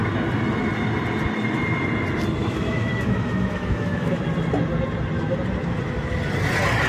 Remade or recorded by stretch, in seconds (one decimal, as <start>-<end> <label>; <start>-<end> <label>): 0.0-2.4 recorded; 2.4-4.2 remade; 4.2-6.9 recorded